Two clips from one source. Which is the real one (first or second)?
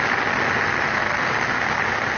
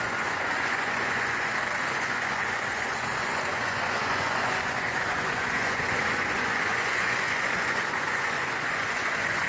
first